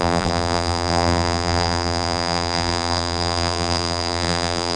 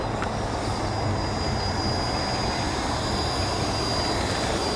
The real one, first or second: second